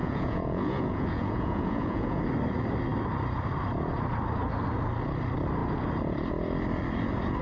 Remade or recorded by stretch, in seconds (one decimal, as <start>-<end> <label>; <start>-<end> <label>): 0.0-2.2 remade; 2.2-7.4 recorded